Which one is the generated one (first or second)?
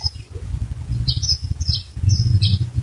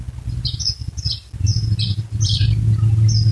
first